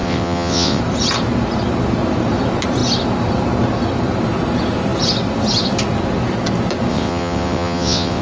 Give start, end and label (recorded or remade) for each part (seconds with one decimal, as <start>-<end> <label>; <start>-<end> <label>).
0.0-0.8 remade; 0.8-6.9 recorded; 6.9-8.2 remade